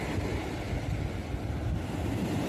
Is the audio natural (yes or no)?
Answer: yes